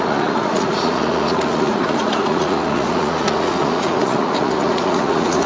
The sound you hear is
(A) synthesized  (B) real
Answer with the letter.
A